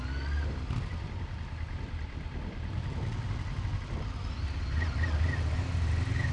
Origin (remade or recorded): recorded